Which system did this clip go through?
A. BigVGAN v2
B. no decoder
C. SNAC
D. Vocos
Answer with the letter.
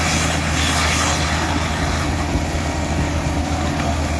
B